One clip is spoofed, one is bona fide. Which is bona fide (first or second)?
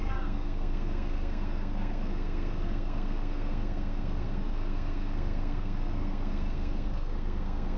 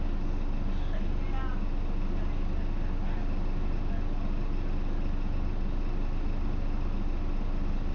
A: second